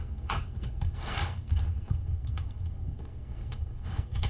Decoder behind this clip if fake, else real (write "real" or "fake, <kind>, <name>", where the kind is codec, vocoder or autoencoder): fake, codec, SNAC